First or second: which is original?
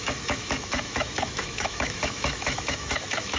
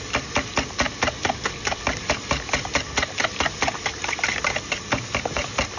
second